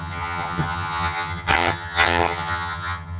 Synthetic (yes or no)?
yes